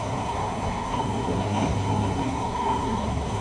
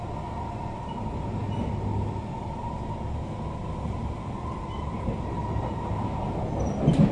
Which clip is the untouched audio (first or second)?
second